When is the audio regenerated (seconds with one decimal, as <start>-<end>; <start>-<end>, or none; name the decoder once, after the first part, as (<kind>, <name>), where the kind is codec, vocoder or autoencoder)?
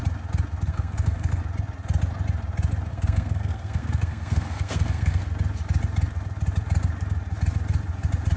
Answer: 0.7-1.4 (codec, SNAC); 2.9-5.2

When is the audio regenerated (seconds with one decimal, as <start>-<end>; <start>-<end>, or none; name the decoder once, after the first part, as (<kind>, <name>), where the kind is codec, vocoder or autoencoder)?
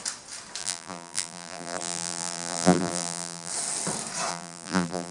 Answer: 0.6-3.5 (vocoder, BigVGAN v2); 4.3-5.1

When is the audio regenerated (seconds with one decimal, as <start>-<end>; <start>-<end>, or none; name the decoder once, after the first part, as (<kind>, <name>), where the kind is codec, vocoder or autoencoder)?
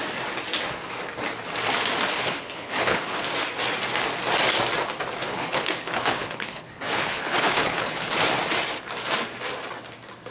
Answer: 2.2-3.2 (codec, HILCodec); 5.2-7.9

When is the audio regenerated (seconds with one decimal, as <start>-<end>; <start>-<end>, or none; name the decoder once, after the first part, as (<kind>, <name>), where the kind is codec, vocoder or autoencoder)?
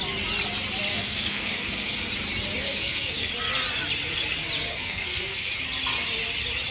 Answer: 0.9-2.1 (codec, SNAC); 2.6-3.3; 4.7-5.5